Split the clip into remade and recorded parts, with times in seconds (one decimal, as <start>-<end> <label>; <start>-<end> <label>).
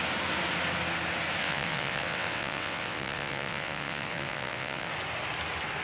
0.0-1.4 recorded; 1.4-4.9 remade; 4.9-5.8 recorded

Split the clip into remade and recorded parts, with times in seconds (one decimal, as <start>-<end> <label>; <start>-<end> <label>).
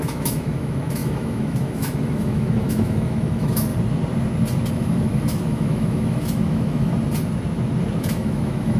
0.0-3.7 remade; 3.7-4.7 recorded; 4.7-6.9 remade; 6.9-8.0 recorded; 8.0-8.8 remade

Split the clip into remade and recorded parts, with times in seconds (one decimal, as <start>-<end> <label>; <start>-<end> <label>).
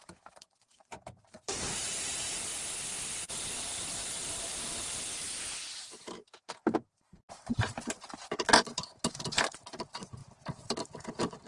0.0-2.5 remade; 2.5-3.4 recorded; 3.4-10.2 remade; 10.2-11.1 recorded; 11.1-11.5 remade